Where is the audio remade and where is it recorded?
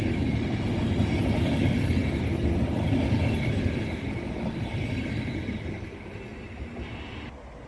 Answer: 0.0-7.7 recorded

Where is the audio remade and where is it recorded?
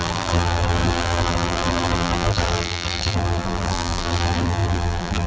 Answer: 0.0-5.3 remade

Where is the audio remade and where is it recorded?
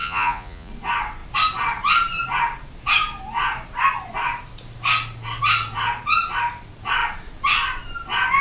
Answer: 0.0-0.7 remade; 0.7-8.4 recorded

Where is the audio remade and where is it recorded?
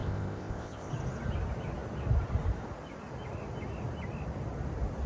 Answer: 0.0-0.9 remade; 0.9-5.1 recorded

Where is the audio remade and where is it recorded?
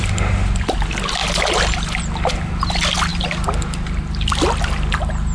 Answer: 0.0-5.3 recorded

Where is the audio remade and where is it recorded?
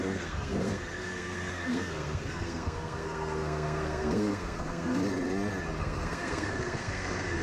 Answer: 0.0-5.0 remade; 5.0-5.8 recorded; 5.8-7.4 remade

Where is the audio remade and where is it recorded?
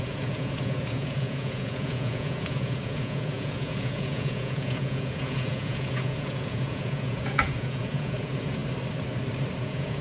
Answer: 0.0-8.6 remade; 8.6-9.6 recorded; 9.6-10.0 remade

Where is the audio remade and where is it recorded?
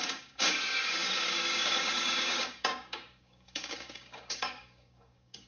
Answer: 0.0-5.5 remade